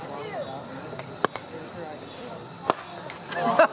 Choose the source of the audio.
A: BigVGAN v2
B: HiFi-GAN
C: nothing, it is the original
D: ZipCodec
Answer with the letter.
C